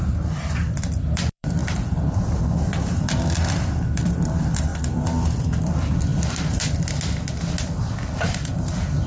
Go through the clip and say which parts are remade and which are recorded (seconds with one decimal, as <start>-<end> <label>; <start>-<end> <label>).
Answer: 0.0-4.7 remade; 4.7-5.6 recorded; 5.6-6.1 remade; 6.1-7.8 recorded; 7.8-9.1 remade